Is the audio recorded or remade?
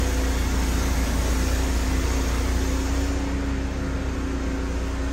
recorded